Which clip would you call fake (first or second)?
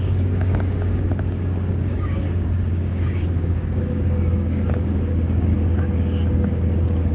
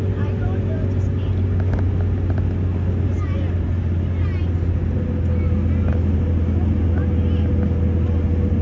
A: first